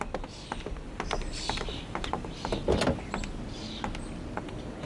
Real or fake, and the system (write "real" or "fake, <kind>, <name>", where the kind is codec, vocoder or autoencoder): real